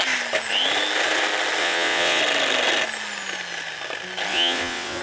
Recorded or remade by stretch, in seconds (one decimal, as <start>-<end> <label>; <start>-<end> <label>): 0.0-1.6 recorded; 1.6-2.2 remade; 2.2-4.3 recorded; 4.3-5.0 remade